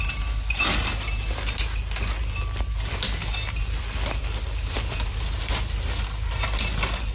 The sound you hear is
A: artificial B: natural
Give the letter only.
B